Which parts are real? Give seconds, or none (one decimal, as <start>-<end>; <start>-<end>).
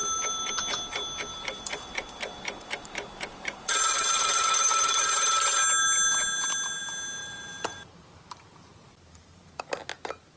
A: 0.5-1.3; 5.1-7.2; 9.6-10.4